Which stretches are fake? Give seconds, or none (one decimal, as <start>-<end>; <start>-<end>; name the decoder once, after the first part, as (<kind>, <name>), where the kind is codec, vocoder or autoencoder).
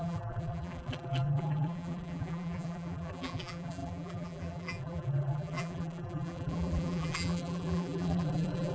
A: 0.0-8.7 (vocoder, BigVGAN v2)